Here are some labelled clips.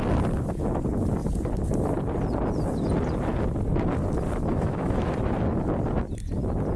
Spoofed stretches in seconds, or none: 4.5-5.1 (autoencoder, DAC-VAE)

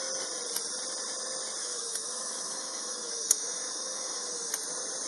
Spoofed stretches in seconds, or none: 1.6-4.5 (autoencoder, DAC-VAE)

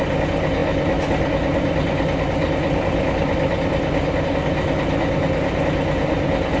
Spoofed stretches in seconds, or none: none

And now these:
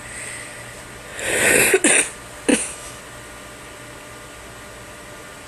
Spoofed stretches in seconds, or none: 2.5-3.0 (autoencoder, DAC-VAE)

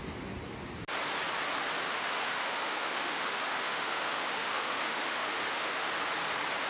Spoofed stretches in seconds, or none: 1.9-5.9 (autoencoder, DAC-VAE)

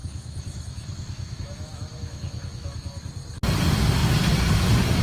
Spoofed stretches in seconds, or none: 0.0-3.0 (autoencoder, DAC-VAE)

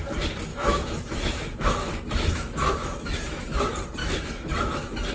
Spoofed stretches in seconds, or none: 0.5-3.6 (autoencoder, DAC-VAE); 4.0-5.1

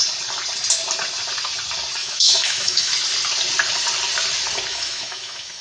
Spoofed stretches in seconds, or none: 2.0-2.9 (autoencoder, DAC-VAE); 4.7-5.6